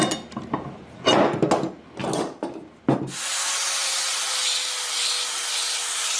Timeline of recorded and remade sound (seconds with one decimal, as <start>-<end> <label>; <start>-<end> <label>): 0.0-6.2 recorded